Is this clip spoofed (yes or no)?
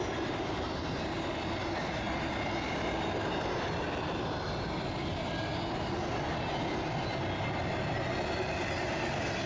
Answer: no